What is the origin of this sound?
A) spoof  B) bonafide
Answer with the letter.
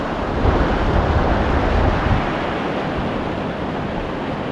B